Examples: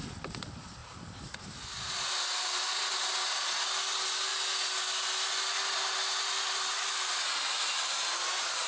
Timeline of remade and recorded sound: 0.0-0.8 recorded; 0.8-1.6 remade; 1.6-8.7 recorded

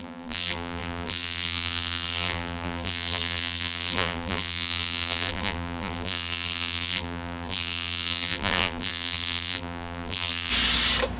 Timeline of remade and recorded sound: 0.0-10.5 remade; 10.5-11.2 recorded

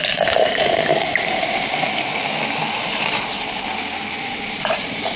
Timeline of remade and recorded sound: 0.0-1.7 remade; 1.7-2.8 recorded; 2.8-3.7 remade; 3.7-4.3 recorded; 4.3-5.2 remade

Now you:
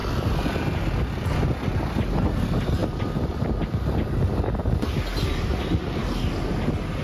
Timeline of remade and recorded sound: 0.0-2.8 recorded; 2.8-3.9 remade; 3.9-7.0 recorded

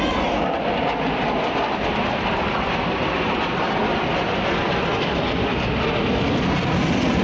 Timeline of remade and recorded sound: 0.0-3.8 remade; 3.8-4.6 recorded; 4.6-7.2 remade

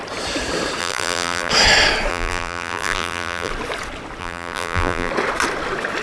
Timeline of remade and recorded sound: 0.0-0.8 recorded; 0.8-1.5 remade; 1.5-2.1 recorded; 2.1-3.5 remade; 3.5-4.2 recorded; 4.2-5.1 remade; 5.1-6.0 recorded

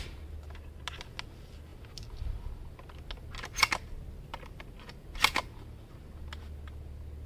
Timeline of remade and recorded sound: 0.0-7.3 recorded